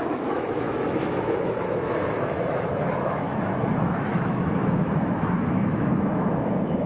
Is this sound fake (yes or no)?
yes